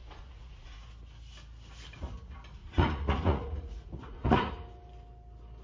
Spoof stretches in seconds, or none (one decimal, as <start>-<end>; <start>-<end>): 0.0-0.9; 2.6-4.5